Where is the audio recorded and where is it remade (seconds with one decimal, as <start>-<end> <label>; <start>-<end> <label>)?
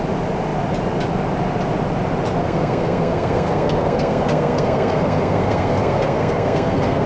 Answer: 0.0-2.4 recorded; 2.4-7.1 remade